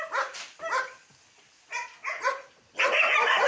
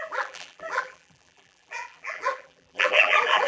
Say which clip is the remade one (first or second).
second